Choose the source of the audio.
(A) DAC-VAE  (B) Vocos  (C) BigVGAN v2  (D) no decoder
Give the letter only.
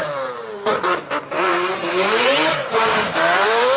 C